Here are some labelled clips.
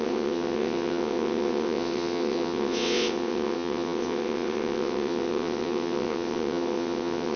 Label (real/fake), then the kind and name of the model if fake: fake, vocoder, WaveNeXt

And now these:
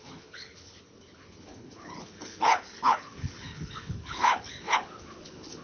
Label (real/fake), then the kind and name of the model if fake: fake, codec, HILCodec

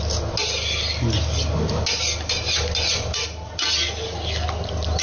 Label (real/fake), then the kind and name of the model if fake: real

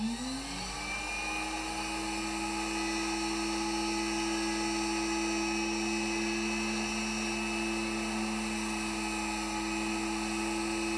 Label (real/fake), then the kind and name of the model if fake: real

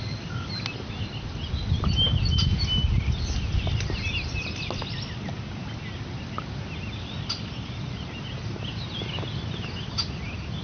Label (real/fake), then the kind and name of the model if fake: real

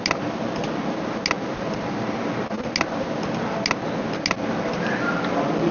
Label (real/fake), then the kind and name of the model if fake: real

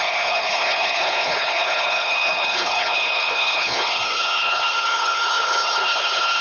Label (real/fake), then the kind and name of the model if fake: fake, codec, HILCodec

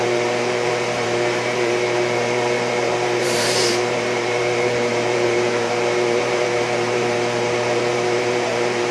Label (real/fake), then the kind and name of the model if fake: fake, vocoder, BigVGAN v2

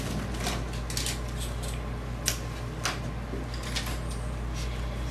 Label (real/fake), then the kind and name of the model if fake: real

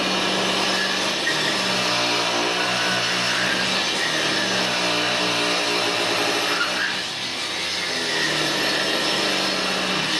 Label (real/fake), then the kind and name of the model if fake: real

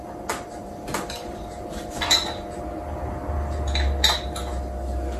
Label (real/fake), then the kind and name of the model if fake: real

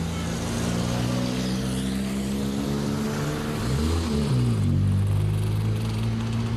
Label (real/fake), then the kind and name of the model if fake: real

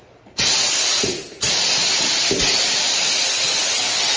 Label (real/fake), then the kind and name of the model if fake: real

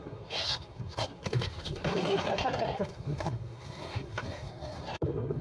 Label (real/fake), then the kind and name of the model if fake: fake, codec, SNAC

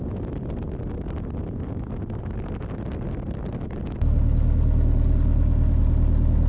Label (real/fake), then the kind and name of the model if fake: real